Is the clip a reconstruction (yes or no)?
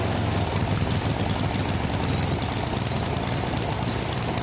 yes